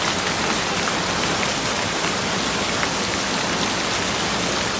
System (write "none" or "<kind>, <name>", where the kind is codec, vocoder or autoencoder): none